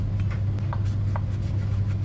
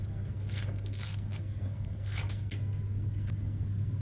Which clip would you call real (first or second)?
first